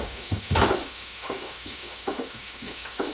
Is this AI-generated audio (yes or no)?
yes